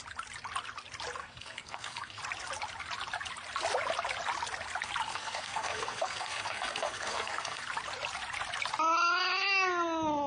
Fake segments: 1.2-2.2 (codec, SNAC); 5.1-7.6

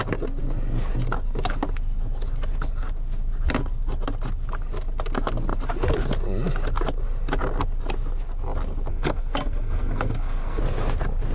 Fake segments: 8.9-10.6 (codec, SNAC)